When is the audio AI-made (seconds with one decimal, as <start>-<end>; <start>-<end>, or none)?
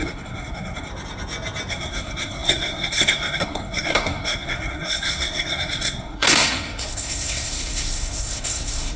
0.0-0.9; 1.7-9.0